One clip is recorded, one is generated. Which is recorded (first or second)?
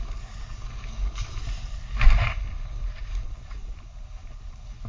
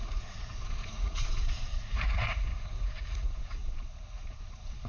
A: first